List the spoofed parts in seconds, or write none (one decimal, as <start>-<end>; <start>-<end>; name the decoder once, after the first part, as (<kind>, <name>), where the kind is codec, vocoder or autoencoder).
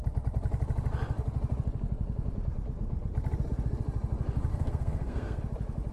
4.5-5.4 (codec, SNAC)